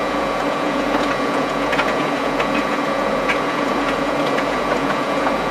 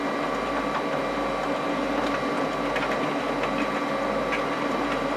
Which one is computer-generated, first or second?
first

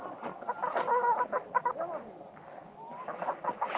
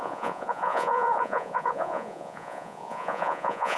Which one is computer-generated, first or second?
second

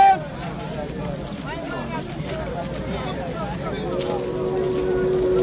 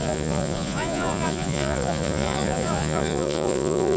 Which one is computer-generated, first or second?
second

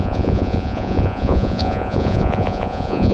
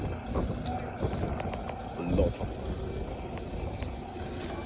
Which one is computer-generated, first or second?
first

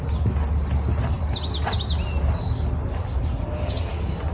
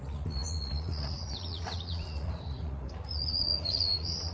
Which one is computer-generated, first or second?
second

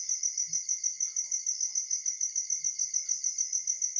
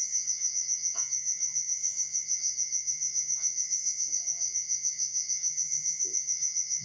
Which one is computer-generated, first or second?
second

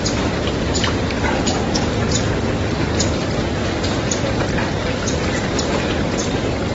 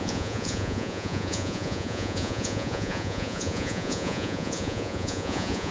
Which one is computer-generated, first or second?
second